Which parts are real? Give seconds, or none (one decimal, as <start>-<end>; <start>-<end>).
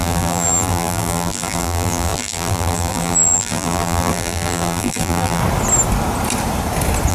5.4-7.1